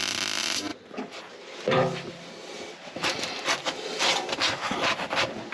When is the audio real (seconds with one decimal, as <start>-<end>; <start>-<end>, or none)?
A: 0.0-5.5